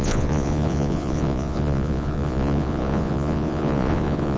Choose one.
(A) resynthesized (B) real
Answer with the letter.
A